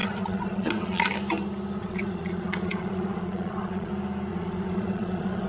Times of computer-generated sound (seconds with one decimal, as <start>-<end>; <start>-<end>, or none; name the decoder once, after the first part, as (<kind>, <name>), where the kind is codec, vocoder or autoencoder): 0.0-1.1 (vocoder, Vocos); 1.8-3.9; 4.3-5.5